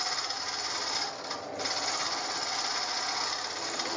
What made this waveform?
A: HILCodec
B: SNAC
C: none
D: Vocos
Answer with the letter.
C